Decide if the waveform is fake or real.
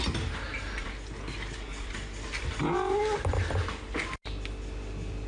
real